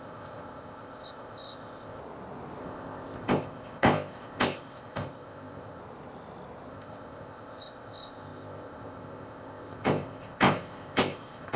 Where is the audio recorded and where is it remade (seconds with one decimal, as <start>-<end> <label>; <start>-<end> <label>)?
0.0-2.0 remade; 2.0-2.6 recorded; 2.6-5.8 remade; 5.8-6.7 recorded; 6.7-11.6 remade